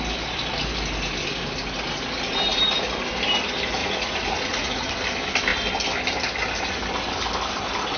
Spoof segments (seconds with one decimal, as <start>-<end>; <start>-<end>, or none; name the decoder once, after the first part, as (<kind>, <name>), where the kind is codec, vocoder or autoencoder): 3.8-4.9 (vocoder, Vocos)

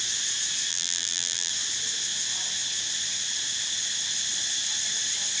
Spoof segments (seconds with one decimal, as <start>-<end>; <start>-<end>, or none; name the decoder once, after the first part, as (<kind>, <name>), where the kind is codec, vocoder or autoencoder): 0.7-1.5 (vocoder, BigVGAN v2)

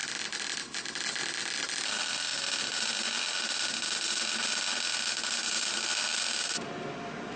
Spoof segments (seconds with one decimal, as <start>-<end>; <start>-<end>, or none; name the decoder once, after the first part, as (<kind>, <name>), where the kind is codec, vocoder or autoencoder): none